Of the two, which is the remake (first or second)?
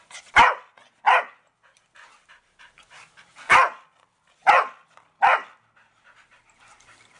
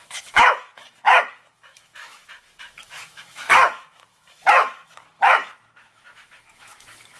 second